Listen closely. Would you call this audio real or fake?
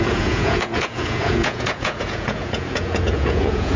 fake